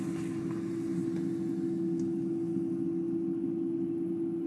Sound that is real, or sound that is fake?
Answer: real